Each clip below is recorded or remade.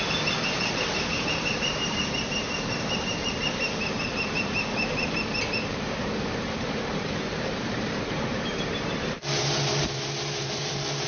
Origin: remade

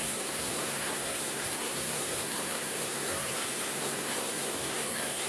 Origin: remade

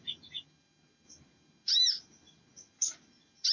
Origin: recorded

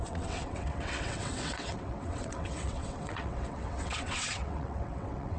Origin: remade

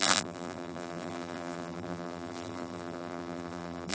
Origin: remade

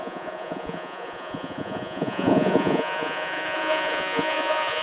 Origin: remade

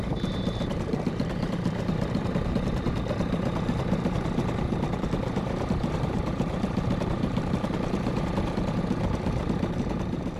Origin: remade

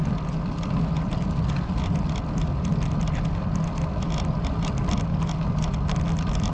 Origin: recorded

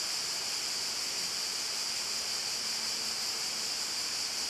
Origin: recorded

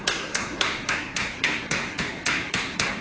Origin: remade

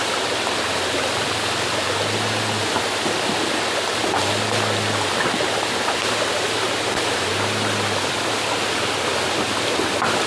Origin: recorded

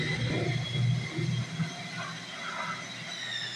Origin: recorded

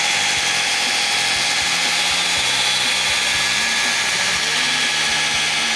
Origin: recorded